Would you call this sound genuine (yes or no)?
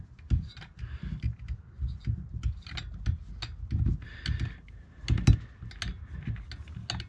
yes